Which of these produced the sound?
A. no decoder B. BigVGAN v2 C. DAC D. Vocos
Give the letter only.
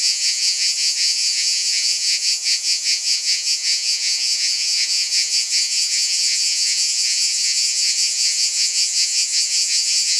D